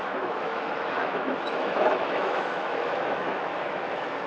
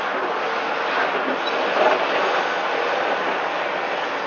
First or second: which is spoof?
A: first